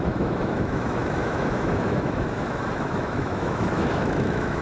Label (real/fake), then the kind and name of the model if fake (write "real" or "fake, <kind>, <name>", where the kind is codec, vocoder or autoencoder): fake, autoencoder, DAC-VAE